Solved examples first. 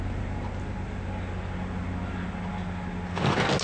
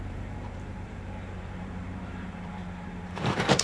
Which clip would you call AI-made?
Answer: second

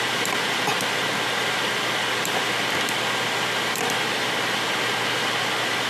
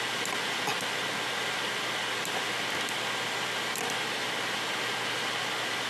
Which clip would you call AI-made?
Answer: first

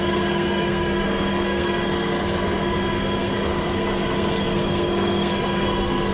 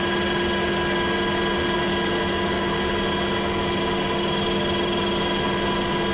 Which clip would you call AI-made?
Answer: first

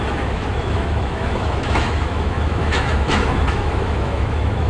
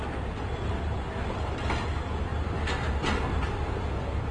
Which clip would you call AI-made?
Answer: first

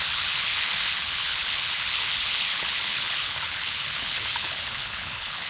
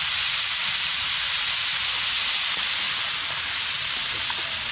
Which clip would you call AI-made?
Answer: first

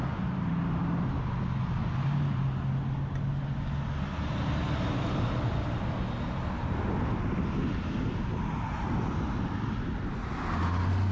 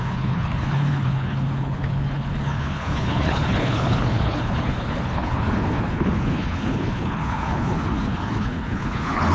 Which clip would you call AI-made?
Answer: second